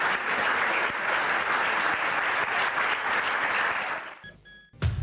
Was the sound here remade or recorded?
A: recorded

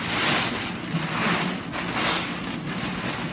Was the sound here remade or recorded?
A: recorded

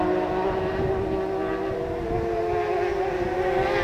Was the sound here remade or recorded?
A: recorded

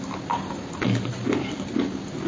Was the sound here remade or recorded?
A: recorded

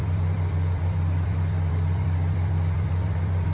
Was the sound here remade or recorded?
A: remade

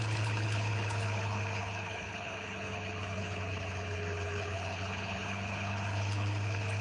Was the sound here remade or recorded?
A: remade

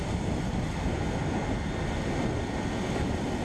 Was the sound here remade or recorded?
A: recorded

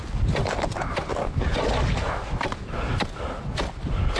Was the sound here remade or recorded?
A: recorded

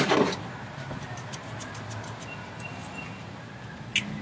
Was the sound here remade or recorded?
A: recorded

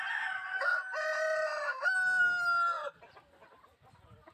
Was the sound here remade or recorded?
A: recorded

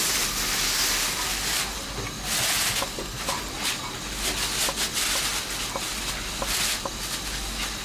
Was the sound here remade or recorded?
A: recorded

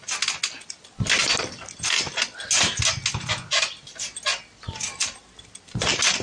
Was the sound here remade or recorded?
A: recorded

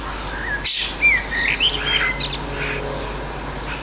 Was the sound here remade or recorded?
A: recorded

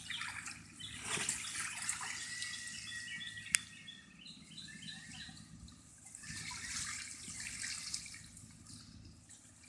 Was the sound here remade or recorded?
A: recorded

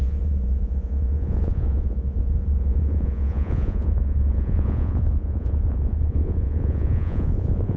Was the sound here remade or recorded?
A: remade